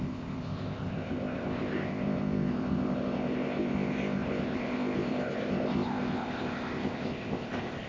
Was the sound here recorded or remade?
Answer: remade